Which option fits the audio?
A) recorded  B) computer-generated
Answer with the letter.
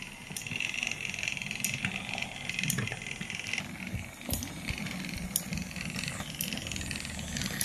B